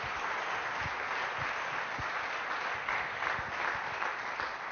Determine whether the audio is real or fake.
real